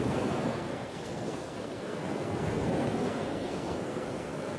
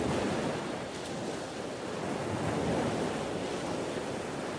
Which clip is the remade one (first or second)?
first